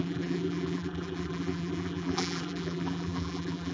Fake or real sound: fake